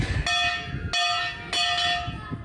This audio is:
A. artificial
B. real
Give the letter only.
B